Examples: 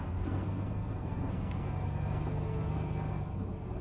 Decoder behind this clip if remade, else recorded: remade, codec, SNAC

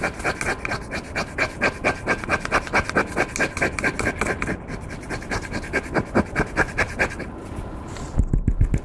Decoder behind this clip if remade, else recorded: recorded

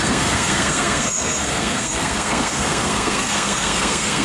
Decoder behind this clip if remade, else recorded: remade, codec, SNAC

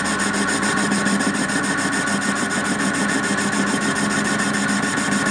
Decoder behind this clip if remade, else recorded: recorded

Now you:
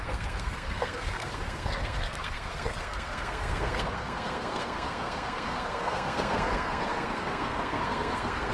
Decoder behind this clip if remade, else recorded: remade, codec, SNAC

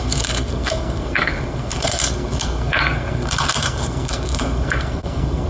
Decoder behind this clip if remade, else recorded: remade, codec, SNAC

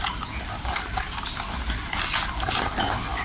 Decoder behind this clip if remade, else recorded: recorded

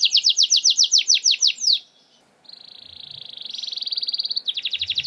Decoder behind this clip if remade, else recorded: recorded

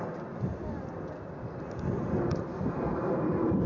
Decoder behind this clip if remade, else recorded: recorded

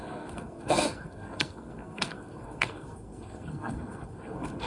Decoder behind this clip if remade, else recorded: remade, codec, SNAC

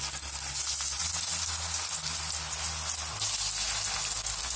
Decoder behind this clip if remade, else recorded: recorded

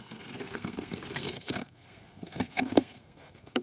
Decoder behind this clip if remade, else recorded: remade, codec, SNAC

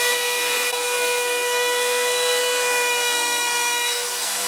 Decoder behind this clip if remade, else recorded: remade, codec, SNAC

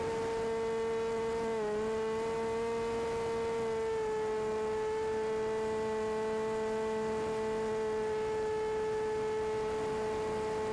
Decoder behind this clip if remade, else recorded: recorded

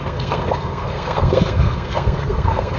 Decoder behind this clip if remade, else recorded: remade, codec, SNAC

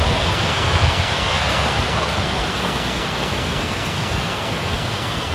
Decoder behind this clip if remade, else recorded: remade, codec, SNAC